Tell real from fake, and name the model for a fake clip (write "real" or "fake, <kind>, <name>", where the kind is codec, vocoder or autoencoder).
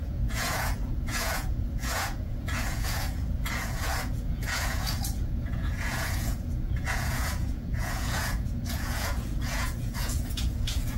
fake, vocoder, Vocos